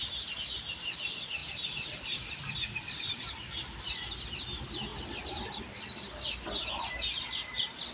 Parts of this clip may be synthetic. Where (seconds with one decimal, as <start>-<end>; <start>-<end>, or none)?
1.4-3.8